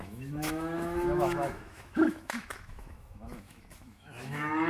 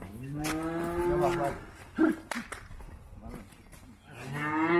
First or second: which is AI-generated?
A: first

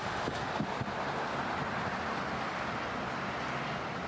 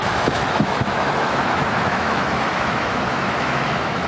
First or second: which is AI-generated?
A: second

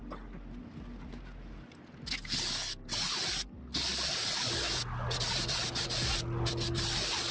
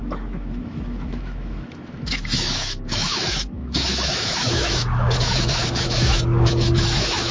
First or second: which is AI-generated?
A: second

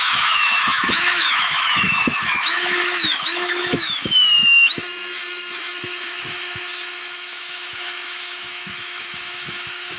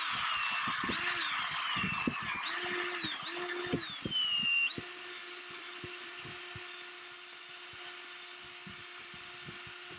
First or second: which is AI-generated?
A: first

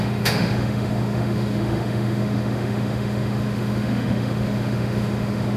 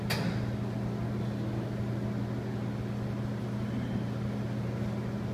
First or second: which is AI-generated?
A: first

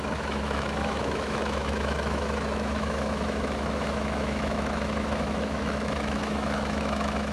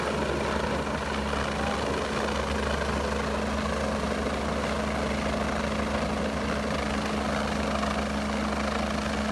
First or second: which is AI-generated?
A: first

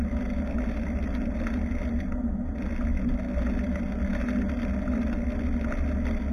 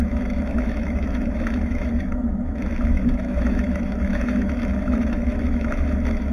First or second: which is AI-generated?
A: second